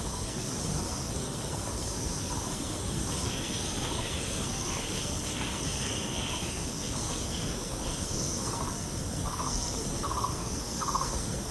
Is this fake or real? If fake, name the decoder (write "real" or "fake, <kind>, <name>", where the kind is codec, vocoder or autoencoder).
fake, codec, SNAC